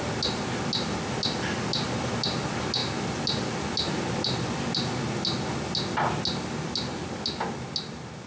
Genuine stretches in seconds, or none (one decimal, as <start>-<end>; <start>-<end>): 0.0-8.3